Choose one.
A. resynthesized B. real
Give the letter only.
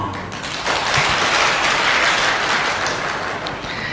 B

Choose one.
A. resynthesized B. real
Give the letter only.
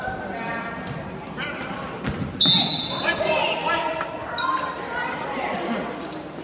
B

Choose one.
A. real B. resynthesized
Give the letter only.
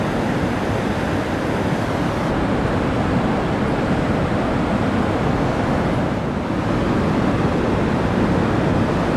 A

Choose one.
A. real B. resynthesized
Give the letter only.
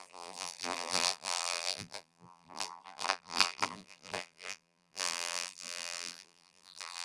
B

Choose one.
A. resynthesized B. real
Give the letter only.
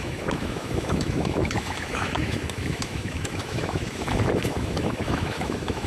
A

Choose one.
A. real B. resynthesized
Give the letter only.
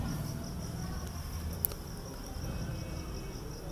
A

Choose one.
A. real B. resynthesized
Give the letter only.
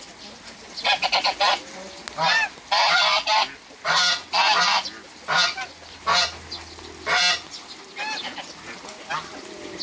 A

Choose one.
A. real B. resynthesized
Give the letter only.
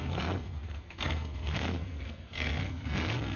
B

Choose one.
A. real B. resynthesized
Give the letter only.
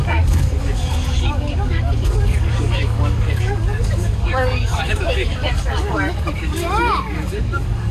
B